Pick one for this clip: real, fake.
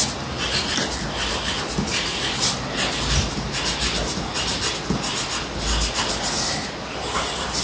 real